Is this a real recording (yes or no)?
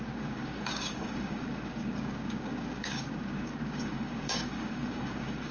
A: no